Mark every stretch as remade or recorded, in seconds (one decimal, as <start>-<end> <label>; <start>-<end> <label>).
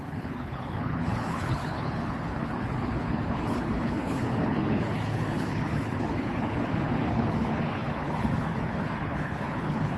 0.0-10.0 remade